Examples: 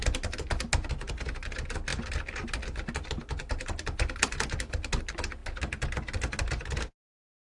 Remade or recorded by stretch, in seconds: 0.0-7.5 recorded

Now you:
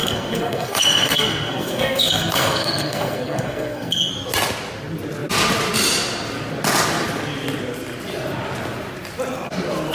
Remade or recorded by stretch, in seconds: 0.0-4.1 remade; 4.1-9.9 recorded